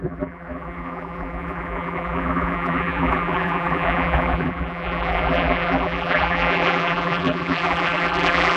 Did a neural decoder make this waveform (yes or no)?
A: yes